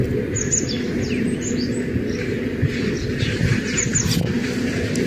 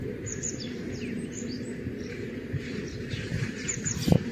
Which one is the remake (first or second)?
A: second